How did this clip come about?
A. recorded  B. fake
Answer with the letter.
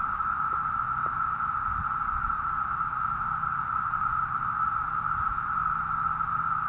A